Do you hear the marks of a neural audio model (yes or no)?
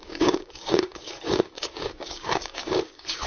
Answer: yes